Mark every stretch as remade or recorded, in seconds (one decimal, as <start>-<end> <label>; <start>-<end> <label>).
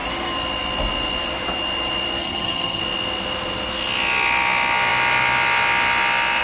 0.0-2.2 recorded; 2.2-2.8 remade; 2.8-6.4 recorded